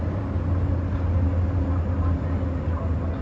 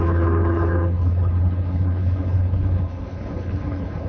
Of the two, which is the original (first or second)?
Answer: first